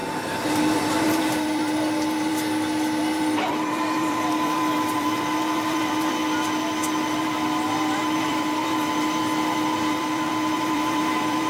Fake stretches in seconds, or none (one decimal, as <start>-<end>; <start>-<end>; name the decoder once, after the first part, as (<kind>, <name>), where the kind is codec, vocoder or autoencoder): 0.0-2.3 (vocoder, BigVGAN v2); 3.0-6.2; 7.1-9.2; 9.8-11.5